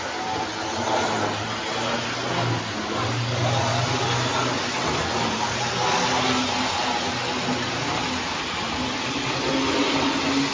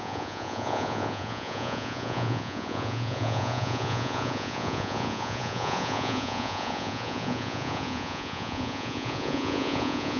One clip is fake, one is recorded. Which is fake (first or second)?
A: second